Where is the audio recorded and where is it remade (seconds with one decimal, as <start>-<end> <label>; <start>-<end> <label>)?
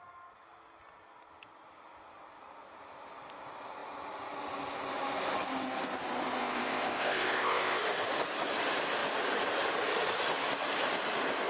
0.0-6.4 recorded; 6.4-7.8 remade; 7.8-11.5 recorded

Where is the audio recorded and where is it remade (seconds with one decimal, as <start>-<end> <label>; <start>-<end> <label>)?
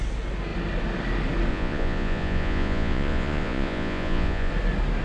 0.0-1.5 recorded; 1.5-4.5 remade; 4.5-5.0 recorded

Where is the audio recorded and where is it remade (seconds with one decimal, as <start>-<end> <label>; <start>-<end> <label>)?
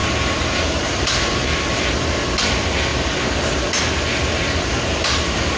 0.0-1.8 remade; 1.8-5.6 recorded